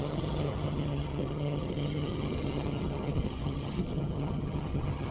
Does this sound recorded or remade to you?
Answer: remade